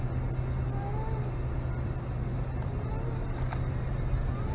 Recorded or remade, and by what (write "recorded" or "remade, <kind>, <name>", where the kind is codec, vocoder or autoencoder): recorded